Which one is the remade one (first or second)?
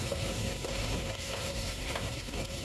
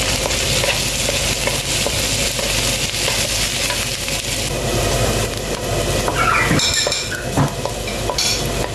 first